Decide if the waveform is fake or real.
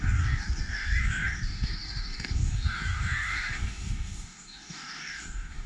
fake